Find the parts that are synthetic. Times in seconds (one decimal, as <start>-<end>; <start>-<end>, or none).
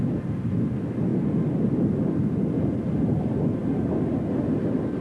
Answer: none